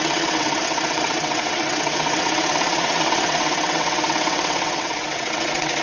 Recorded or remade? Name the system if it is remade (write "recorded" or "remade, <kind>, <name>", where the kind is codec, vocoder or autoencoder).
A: remade, vocoder, WaveNeXt